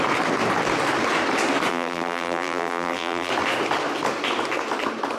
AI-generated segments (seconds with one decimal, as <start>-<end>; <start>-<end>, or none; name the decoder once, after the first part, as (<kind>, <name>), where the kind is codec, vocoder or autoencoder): 1.7-3.3 (vocoder, BigVGAN v2)